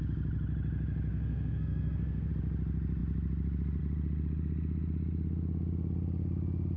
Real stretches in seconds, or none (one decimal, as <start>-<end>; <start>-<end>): 0.0-1.1; 2.3-6.8